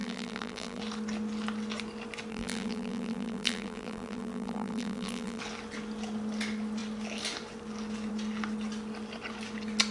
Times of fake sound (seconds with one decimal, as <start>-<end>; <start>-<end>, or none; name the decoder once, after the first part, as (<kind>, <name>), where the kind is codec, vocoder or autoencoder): 0.0-0.8 (vocoder, BigVGAN v2); 2.3-5.4